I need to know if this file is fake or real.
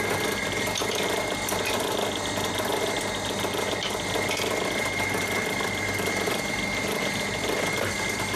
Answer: real